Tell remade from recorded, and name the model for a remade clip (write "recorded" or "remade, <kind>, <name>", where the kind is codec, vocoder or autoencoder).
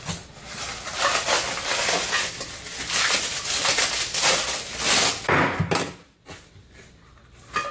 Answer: recorded